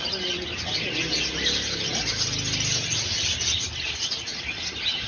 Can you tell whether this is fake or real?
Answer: real